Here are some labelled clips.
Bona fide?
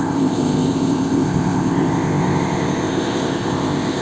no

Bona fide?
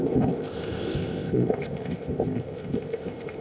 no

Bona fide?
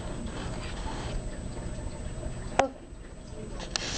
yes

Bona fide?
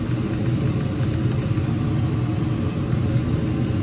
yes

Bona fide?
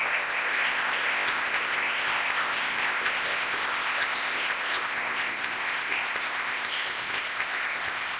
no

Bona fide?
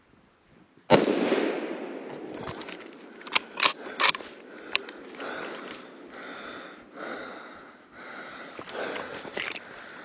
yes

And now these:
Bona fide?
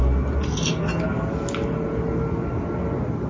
yes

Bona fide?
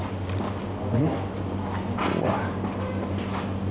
yes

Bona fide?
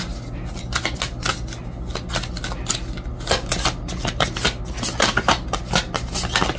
yes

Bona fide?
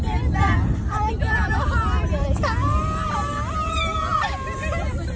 yes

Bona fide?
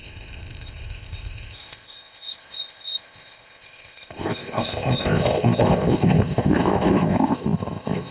no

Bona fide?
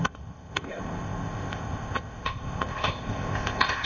no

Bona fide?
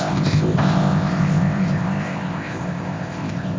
no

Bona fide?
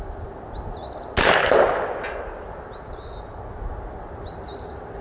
yes